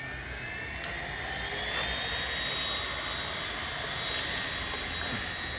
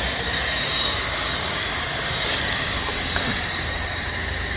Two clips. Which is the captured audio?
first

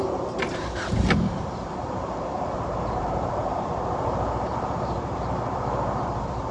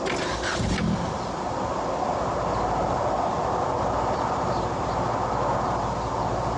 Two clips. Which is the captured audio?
second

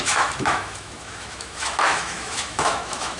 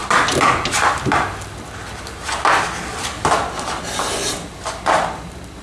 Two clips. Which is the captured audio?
second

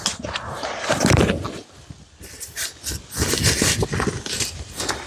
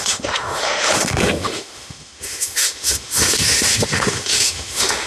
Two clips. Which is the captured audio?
first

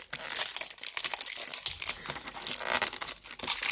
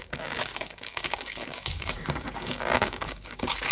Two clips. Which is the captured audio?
first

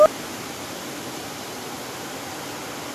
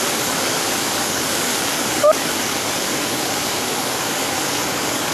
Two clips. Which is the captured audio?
first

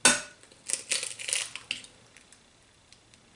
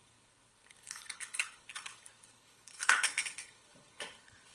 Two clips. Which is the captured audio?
first